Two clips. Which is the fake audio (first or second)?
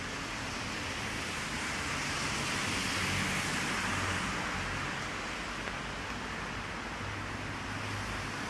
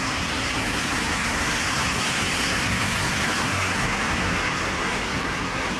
second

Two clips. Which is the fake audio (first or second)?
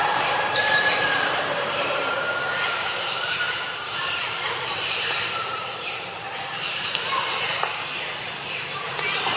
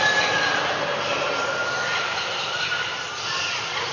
first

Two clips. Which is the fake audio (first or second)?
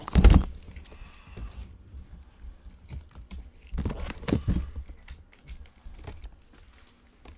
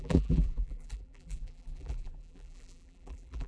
second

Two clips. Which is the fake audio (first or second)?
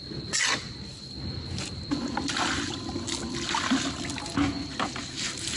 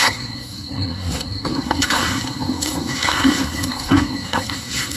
second